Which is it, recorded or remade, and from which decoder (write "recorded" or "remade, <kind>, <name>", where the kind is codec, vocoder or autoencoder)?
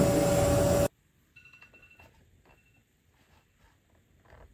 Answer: recorded